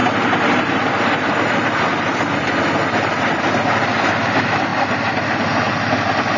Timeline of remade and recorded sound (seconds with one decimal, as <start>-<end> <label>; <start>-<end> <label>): 0.0-3.4 remade; 3.4-6.4 recorded